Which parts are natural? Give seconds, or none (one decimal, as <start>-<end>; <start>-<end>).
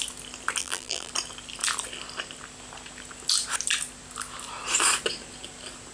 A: 0.0-0.6; 1.1-5.9